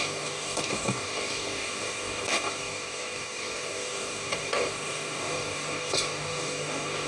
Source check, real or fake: fake